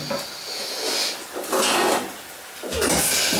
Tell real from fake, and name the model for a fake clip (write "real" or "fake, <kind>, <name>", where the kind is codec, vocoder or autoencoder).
real